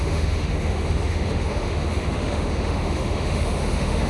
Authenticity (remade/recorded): remade